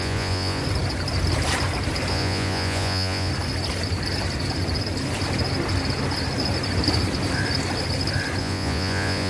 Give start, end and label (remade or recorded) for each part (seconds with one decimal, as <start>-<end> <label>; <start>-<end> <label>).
0.0-0.6 remade; 0.6-2.1 recorded; 2.1-3.3 remade; 3.3-8.4 recorded; 8.4-9.3 remade